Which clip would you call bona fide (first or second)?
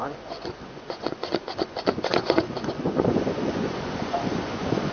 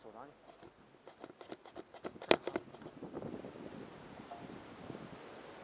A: second